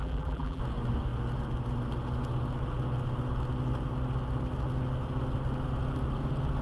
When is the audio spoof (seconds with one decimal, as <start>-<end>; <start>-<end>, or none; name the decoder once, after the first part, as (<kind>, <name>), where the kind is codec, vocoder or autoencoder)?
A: 0.0-0.6 (vocoder, BigVGAN v2)